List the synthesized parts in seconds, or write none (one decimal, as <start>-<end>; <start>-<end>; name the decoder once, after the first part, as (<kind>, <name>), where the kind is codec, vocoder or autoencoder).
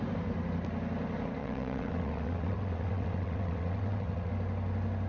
1.4-4.3 (vocoder, WaveNeXt)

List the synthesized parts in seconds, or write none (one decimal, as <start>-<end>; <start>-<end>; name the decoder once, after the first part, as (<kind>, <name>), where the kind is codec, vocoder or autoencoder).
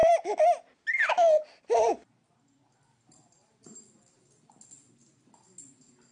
none